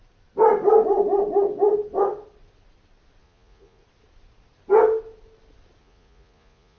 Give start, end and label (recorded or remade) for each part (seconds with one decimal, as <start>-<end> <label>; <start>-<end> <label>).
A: 0.0-3.2 recorded; 3.2-3.8 remade; 3.8-5.8 recorded; 5.8-6.8 remade

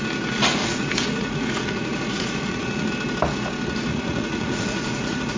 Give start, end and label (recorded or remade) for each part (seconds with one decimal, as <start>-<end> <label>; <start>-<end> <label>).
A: 0.0-0.6 recorded; 0.6-2.9 remade; 2.9-3.9 recorded; 3.9-5.4 remade

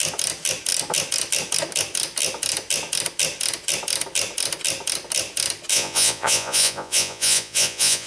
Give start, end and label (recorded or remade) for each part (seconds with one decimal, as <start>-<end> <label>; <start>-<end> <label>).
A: 0.0-5.7 recorded; 5.7-8.1 remade

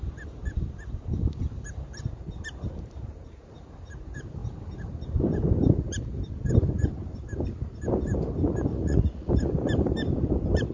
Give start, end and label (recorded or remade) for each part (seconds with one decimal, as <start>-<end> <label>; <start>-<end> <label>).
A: 0.0-8.7 recorded; 8.7-9.3 remade; 9.3-10.7 recorded

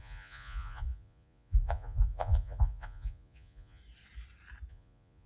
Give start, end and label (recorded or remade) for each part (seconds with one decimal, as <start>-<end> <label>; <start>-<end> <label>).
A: 0.0-3.8 remade; 3.8-4.7 recorded; 4.7-5.3 remade

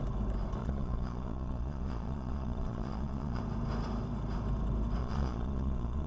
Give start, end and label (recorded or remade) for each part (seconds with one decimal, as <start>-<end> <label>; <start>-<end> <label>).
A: 0.0-0.6 recorded; 0.6-3.4 remade; 3.4-5.0 recorded; 5.0-6.1 remade